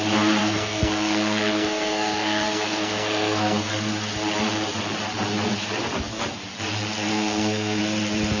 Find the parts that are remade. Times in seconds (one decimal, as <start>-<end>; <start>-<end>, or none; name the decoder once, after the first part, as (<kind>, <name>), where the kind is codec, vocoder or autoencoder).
0.4-3.7 (codec, SNAC); 7.1-7.8